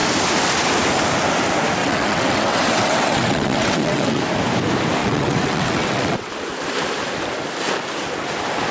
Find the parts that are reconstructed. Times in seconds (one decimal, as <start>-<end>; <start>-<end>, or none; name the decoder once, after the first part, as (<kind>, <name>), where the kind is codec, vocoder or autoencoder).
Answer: 1.8-4.2 (vocoder, WaveNeXt); 5.0-6.3